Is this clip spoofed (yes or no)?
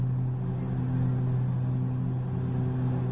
no